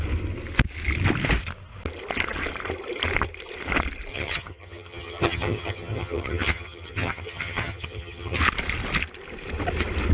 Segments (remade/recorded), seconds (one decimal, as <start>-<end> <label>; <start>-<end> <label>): 0.0-4.1 recorded; 4.1-8.4 remade; 8.4-10.1 recorded